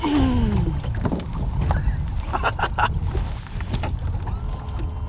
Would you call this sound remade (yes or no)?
no